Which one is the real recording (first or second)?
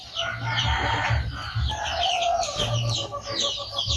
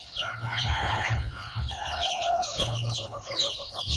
first